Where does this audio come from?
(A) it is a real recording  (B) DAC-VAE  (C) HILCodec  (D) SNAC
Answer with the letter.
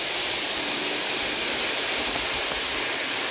A